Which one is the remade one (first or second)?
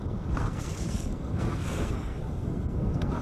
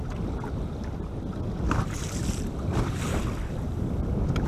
first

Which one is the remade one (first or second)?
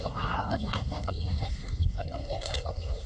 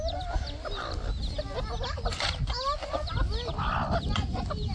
first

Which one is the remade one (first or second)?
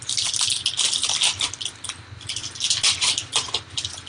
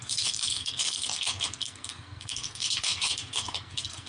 second